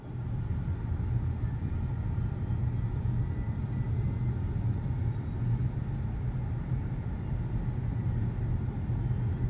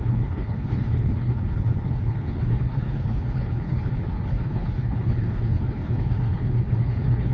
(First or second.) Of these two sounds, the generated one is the second